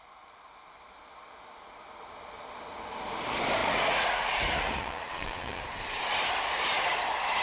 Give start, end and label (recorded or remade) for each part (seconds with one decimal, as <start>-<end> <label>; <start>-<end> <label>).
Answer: 0.0-3.6 recorded; 3.6-5.6 remade; 5.6-7.4 recorded